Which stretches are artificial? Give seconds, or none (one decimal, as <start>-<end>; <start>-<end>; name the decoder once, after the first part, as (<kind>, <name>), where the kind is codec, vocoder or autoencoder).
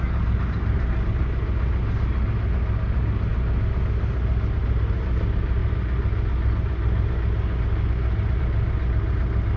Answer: none